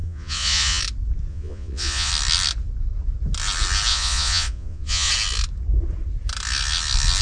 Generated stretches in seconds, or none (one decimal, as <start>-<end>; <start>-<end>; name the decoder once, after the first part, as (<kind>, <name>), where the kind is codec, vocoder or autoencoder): 0.0-0.8 (vocoder, Vocos); 1.3-2.1; 3.9-5.1